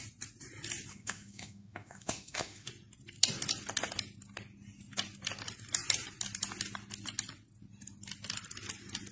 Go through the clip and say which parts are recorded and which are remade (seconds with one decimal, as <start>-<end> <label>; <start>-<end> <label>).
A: 0.0-0.9 recorded; 0.9-2.7 remade; 2.7-9.1 recorded